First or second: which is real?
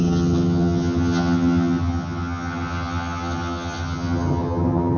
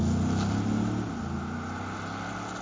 second